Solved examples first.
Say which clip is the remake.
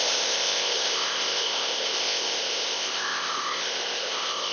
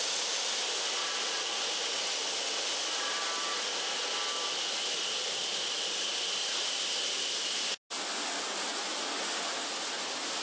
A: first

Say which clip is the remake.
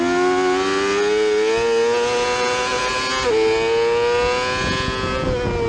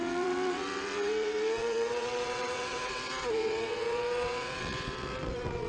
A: second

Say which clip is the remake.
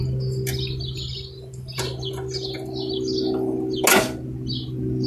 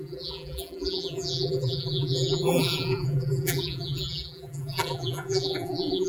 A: second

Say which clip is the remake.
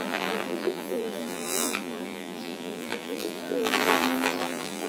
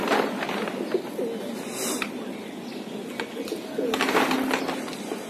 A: first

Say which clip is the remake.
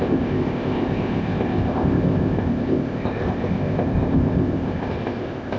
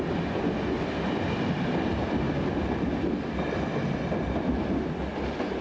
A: first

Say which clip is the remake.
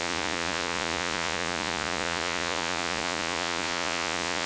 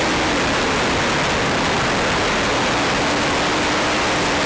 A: first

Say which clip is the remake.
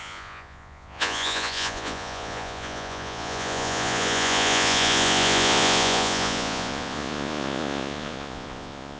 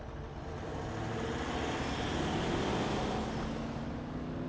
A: first